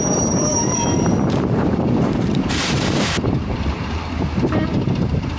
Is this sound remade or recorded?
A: remade